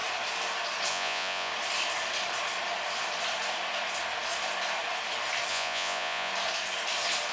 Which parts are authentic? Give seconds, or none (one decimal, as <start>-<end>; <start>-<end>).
0.0-0.9; 1.5-5.5; 6.3-7.3

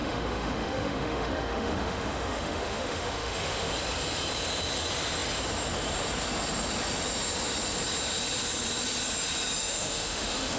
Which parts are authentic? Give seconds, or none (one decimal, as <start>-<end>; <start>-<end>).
3.7-9.6